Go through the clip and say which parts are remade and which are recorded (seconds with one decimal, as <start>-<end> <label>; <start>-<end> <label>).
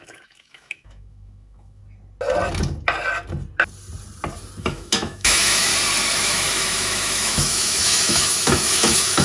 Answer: 0.0-1.8 remade; 1.8-4.6 recorded; 4.6-5.7 remade; 5.7-6.2 recorded; 6.2-9.2 remade